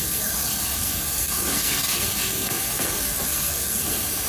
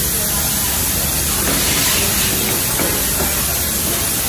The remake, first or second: first